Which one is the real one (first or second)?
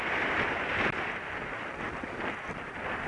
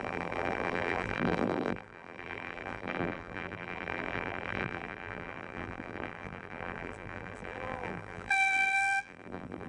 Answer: first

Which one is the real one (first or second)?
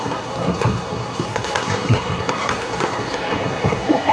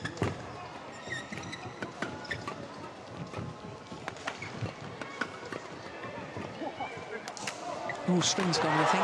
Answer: second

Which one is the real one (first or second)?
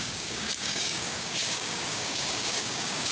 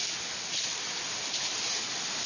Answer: second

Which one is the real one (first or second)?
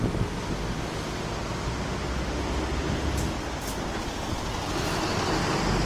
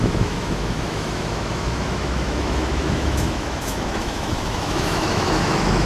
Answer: first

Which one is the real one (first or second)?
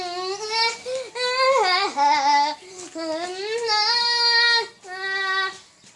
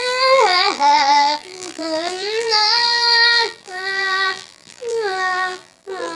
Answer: first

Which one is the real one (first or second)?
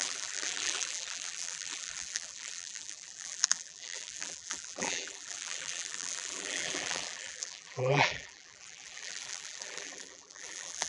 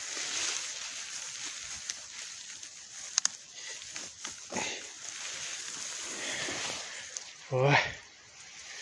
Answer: second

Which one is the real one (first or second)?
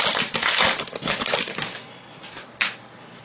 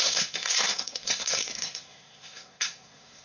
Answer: first